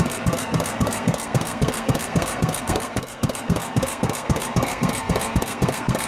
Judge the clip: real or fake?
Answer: fake